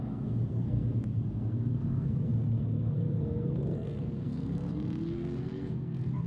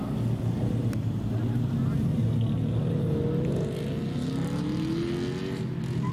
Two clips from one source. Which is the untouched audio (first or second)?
second